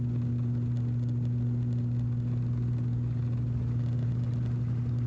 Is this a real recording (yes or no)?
yes